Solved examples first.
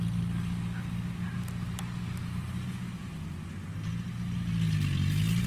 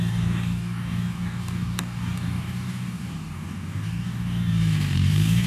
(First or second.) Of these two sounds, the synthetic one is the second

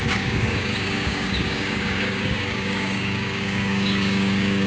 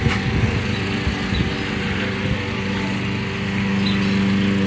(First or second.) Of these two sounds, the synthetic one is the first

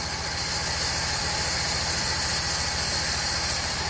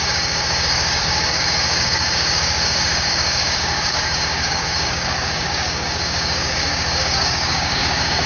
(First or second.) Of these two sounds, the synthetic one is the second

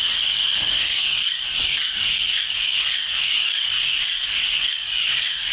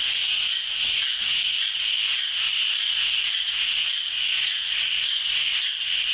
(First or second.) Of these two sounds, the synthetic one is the first